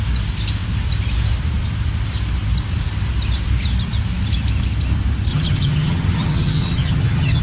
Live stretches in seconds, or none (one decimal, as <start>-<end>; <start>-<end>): 0.0-5.3